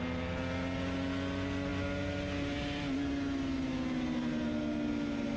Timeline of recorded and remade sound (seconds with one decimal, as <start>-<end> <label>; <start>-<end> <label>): 0.0-5.4 recorded